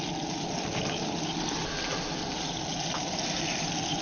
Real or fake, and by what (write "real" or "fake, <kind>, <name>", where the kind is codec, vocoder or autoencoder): real